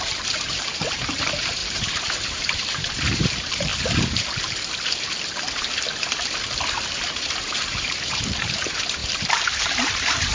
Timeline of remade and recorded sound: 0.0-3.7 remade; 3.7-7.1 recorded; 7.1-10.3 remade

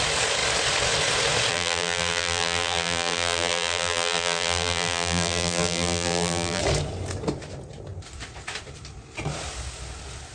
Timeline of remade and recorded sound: 0.0-1.5 recorded; 1.5-6.6 remade; 6.6-10.3 recorded

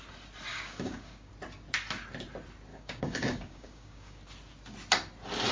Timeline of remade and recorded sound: 0.0-0.5 recorded; 0.5-1.3 remade; 1.3-2.7 recorded; 2.7-4.2 remade; 4.2-5.5 recorded

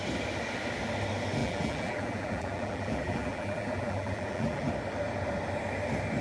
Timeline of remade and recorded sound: 0.0-1.4 recorded; 1.4-4.7 remade; 4.7-6.2 recorded

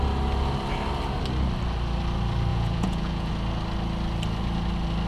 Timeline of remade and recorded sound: 0.0-2.5 recorded; 2.5-3.3 remade; 3.3-5.1 recorded

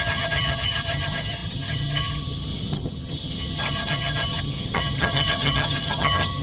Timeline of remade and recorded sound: 0.0-6.4 remade

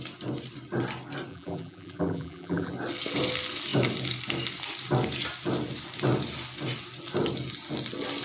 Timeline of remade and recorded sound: 0.0-1.3 recorded; 1.3-2.7 remade; 2.7-8.2 recorded

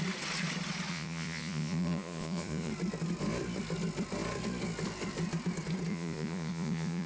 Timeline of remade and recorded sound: 0.0-0.9 recorded; 0.9-2.7 remade; 2.7-5.9 recorded; 5.9-7.1 remade